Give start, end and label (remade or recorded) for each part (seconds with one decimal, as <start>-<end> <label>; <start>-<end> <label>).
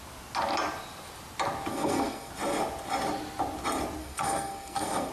0.0-1.7 recorded; 1.7-2.3 remade; 2.3-4.0 recorded; 4.0-5.1 remade